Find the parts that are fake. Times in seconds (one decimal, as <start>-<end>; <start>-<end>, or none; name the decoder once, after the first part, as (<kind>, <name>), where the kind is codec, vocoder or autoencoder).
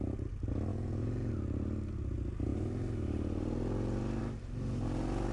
0.7-1.3 (vocoder, Vocos)